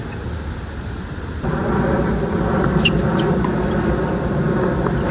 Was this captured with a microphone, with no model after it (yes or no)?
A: yes